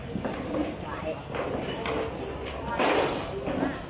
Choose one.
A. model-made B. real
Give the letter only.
B